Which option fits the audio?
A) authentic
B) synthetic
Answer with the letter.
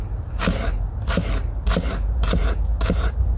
A